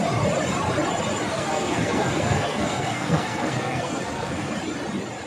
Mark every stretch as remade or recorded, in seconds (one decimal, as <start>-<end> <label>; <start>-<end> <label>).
0.0-1.3 recorded; 1.3-4.5 remade; 4.5-5.3 recorded